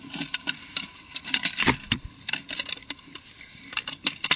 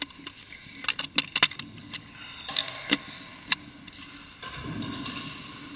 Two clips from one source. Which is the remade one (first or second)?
first